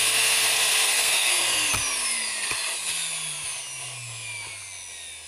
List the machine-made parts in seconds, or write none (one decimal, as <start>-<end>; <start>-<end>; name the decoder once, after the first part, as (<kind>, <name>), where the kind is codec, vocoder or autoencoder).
0.0-1.7 (codec, SNAC)